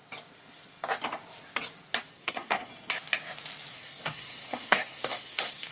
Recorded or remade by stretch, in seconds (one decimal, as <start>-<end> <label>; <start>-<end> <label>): 0.0-2.1 recorded; 2.1-2.7 remade; 2.7-3.7 recorded; 3.7-5.7 remade